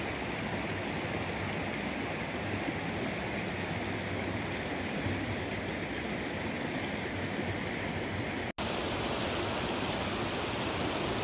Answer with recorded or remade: recorded